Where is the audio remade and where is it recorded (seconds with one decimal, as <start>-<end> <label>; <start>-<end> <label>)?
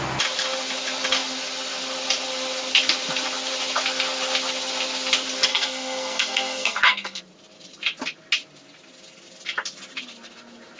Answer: 0.0-5.5 recorded; 5.5-7.2 remade; 7.2-10.8 recorded